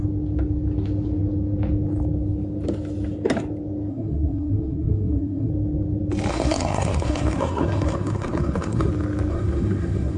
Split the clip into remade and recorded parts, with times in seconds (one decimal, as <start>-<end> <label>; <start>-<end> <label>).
0.0-3.9 recorded; 3.9-5.5 remade; 5.5-6.3 recorded; 6.3-8.9 remade; 8.9-9.3 recorded; 9.3-10.2 remade

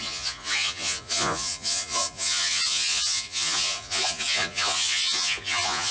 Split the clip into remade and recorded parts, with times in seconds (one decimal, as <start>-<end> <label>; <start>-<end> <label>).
0.0-5.9 remade

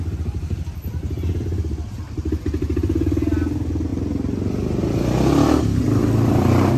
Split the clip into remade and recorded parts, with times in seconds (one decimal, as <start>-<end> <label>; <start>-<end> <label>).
0.0-6.8 recorded